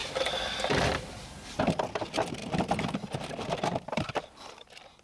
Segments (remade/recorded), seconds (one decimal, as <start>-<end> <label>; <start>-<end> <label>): 0.0-5.0 remade